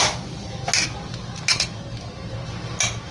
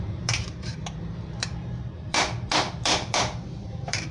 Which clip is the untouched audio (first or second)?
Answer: first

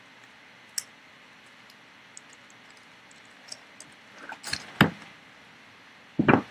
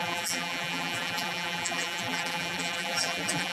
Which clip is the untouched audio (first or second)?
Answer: first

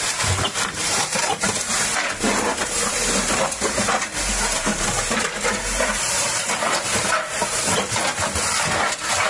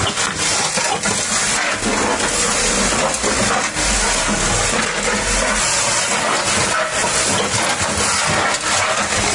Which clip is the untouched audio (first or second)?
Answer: second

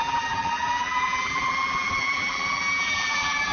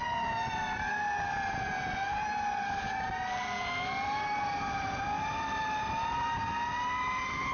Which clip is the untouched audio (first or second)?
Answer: second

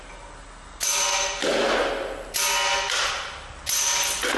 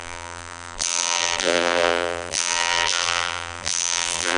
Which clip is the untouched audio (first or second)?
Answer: first